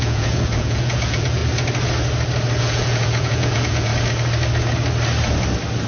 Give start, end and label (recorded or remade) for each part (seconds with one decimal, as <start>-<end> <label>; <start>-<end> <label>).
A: 0.0-1.4 remade; 1.4-2.6 recorded; 2.6-3.9 remade; 3.9-5.9 recorded